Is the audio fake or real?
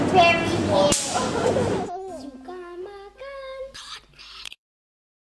real